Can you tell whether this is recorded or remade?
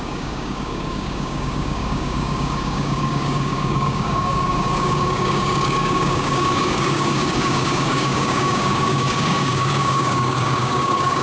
remade